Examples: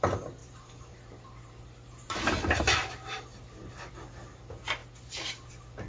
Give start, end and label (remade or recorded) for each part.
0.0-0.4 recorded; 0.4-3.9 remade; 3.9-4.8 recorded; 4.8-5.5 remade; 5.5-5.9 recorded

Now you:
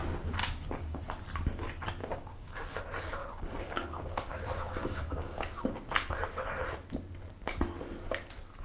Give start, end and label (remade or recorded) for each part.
0.0-0.4 recorded; 0.4-1.0 remade; 1.0-2.0 recorded; 2.0-2.8 remade; 2.8-3.2 recorded; 3.2-5.8 remade; 5.8-8.6 recorded

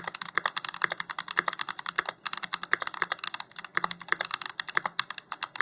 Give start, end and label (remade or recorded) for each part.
0.0-5.6 recorded

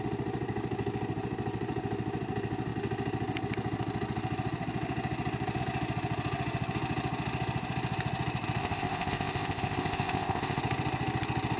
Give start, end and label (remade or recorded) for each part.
0.0-8.6 recorded; 8.6-10.6 remade; 10.6-11.6 recorded

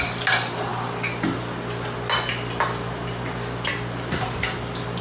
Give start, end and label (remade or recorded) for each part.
0.0-5.0 recorded

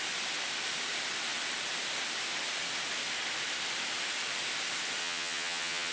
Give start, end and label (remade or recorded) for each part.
0.0-5.0 recorded; 5.0-5.9 remade